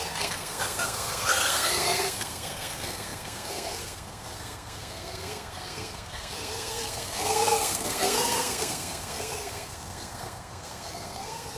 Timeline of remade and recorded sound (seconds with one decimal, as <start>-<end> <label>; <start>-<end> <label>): 0.0-11.6 remade